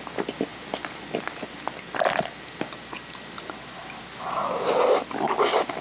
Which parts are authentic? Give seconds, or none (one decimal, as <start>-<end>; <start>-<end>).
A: 0.0-5.8